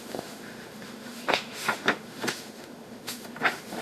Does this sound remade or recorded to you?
remade